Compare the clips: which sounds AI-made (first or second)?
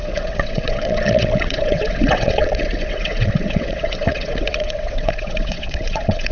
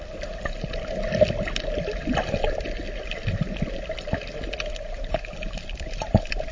first